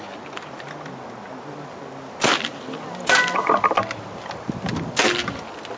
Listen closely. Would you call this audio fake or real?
real